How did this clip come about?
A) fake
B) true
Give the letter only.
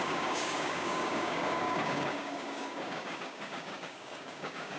A